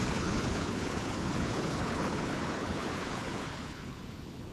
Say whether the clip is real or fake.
fake